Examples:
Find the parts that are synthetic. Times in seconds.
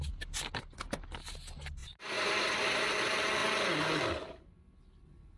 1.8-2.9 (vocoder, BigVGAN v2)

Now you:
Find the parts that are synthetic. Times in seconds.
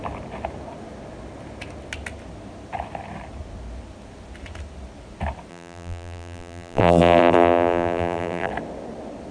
5.5-8.5 (vocoder, BigVGAN v2)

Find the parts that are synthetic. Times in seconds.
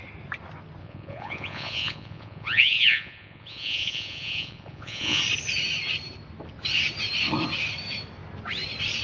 0.8-5.2 (vocoder, Vocos)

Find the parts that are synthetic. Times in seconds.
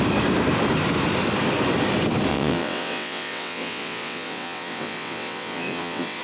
2.3-6.2 (vocoder, WaveNeXt)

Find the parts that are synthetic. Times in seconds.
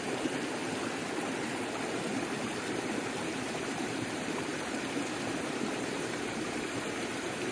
0.0-0.6 (vocoder, BigVGAN v2); 3.1-7.5